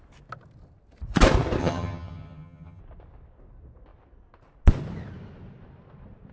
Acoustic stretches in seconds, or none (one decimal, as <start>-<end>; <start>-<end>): 0.0-1.6; 2.8-6.3